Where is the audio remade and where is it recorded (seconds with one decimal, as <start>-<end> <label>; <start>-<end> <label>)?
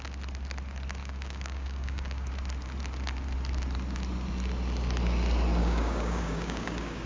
0.0-1.0 recorded; 1.0-2.3 remade; 2.3-5.6 recorded; 5.6-7.1 remade